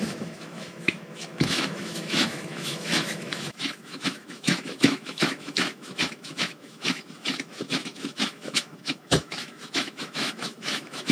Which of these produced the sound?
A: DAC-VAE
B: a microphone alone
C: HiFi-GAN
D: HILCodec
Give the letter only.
A